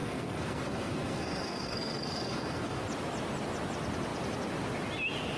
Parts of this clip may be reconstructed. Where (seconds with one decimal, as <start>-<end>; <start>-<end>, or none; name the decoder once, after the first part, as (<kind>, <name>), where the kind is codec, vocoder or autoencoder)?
0.0-2.8 (codec, SNAC)